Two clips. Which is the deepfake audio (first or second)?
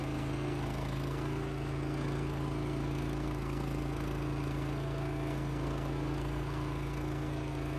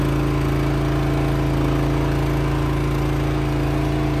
first